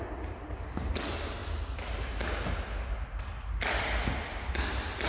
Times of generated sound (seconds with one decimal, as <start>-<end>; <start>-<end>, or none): none